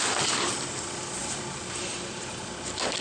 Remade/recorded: recorded